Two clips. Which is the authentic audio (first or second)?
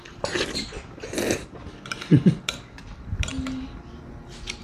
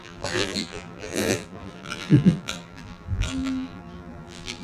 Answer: first